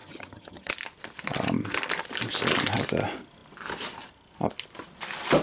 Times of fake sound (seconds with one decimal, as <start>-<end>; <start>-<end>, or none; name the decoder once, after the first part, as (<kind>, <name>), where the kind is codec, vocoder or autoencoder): 0.0-0.7 (vocoder, HiFi-GAN)

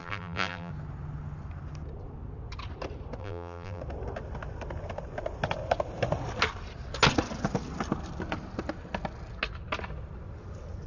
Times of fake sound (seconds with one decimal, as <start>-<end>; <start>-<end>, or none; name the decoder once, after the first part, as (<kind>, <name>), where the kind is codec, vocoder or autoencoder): 0.0-0.7 (vocoder, BigVGAN v2); 3.2-3.8